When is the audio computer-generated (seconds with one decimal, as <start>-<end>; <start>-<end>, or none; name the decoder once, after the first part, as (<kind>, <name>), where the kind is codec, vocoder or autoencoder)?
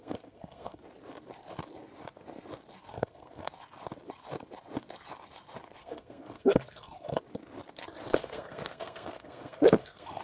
0.0-0.8 (codec, SNAC); 2.9-3.5; 5.8-7.2; 8.2-10.2